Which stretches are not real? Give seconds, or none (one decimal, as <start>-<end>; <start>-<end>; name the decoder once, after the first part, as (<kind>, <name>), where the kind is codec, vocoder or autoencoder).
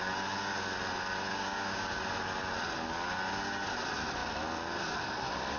1.3-2.0 (codec, DAC)